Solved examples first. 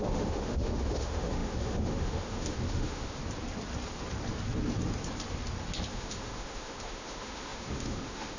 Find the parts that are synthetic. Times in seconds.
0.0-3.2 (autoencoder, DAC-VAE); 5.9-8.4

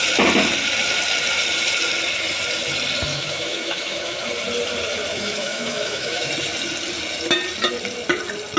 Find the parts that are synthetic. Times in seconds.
3.1-4.3 (autoencoder, DAC-VAE); 5.1-6.3